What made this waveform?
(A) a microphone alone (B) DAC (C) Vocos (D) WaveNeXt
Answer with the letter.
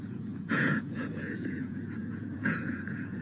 C